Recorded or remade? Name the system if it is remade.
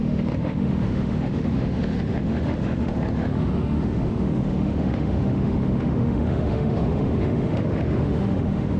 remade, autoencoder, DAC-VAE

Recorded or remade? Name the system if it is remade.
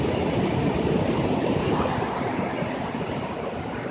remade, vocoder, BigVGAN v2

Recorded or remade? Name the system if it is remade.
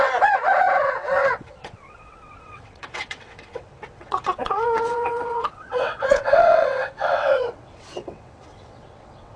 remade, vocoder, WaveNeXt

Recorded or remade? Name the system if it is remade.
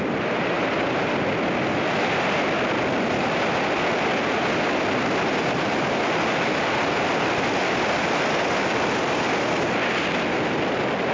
recorded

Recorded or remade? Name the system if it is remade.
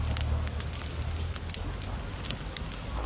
recorded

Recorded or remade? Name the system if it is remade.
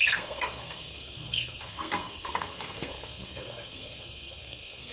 remade, codec, SNAC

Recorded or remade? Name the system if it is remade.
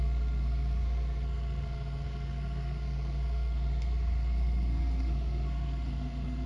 remade, codec, SNAC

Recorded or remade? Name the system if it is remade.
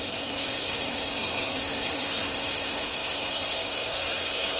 remade, codec, SNAC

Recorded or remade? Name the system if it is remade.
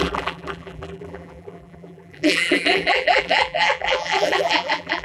remade, vocoder, BigVGAN v2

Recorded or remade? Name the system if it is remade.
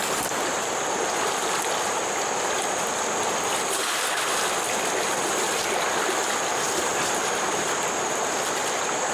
recorded